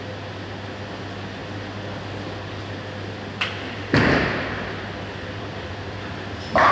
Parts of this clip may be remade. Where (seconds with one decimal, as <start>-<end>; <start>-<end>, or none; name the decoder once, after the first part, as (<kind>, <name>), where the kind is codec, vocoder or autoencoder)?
none